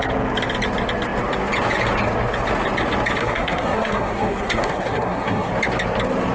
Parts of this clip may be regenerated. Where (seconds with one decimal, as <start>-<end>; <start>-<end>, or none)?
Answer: 3.2-5.5